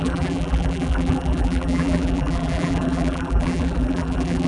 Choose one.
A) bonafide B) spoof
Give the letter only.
B